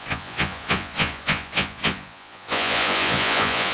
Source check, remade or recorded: remade